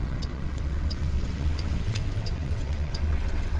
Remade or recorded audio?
remade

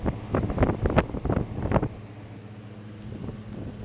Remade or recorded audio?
recorded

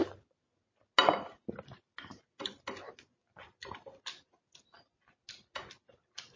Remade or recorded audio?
recorded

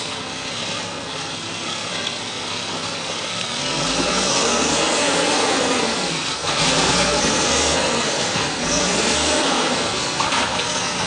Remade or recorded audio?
remade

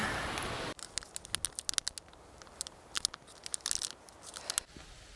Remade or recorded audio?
recorded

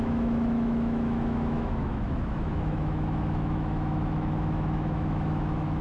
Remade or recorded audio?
remade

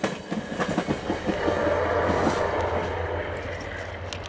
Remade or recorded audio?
recorded